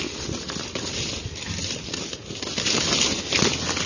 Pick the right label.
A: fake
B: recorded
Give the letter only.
B